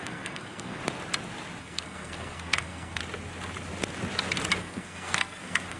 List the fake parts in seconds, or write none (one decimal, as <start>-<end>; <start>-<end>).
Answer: 0.0-0.8; 1.6-3.0; 4.6-5.8